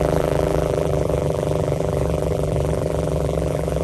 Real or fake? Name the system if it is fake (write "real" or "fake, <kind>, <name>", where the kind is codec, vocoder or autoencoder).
fake, vocoder, BigVGAN v2